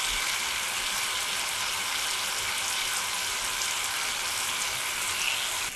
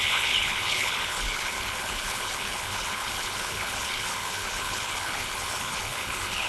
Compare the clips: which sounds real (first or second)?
first